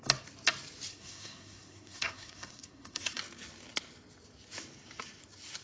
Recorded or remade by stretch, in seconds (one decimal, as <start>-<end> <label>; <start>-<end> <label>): 0.0-0.9 recorded; 0.9-3.2 remade; 3.2-5.6 recorded